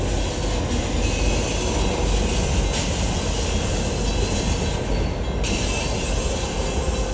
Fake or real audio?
real